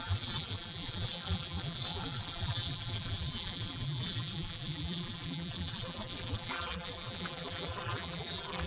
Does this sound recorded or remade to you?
remade